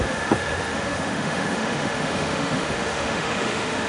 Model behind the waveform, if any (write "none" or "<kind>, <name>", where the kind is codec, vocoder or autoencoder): autoencoder, DAC-VAE